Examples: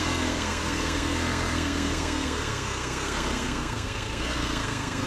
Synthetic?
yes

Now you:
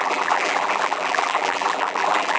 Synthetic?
yes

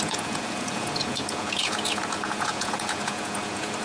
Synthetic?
yes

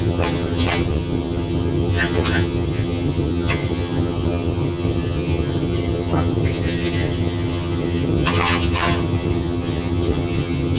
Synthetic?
yes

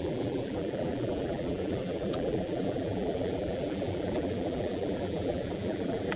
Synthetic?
yes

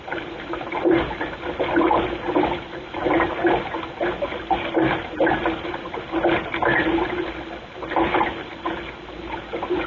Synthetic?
no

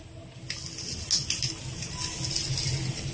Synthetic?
no